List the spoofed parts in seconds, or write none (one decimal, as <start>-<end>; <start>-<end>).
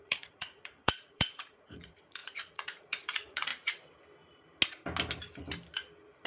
0.0-3.5